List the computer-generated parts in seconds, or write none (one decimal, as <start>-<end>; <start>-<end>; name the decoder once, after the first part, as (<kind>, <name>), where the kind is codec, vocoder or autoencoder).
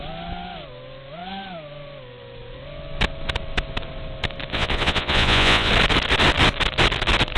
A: 4.5-5.7 (vocoder, Vocos)